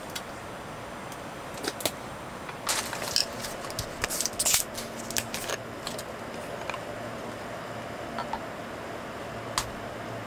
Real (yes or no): yes